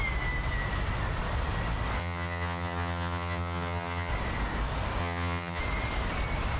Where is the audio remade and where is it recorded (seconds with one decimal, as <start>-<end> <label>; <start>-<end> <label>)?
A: 0.0-2.0 recorded; 2.0-4.1 remade; 4.1-5.0 recorded; 5.0-5.6 remade; 5.6-6.6 recorded